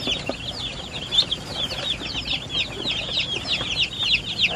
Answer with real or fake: real